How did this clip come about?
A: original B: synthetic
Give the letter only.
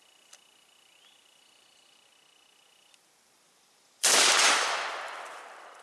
B